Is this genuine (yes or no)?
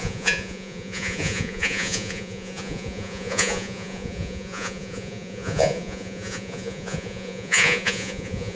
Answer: no